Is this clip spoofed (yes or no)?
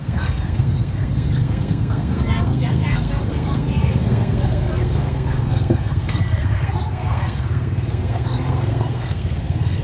yes